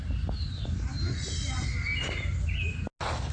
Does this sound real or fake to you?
real